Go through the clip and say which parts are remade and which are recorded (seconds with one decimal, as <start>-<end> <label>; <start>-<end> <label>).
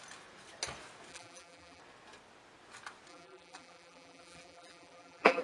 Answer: 0.0-1.1 recorded; 1.1-1.8 remade; 1.8-3.1 recorded; 3.1-5.4 remade